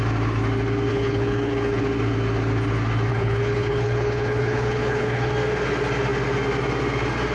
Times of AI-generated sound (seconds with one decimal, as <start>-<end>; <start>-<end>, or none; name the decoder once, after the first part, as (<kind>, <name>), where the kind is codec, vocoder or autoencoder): 0.9-1.8 (codec, HILCodec); 3.1-5.3